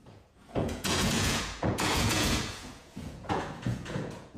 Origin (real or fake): fake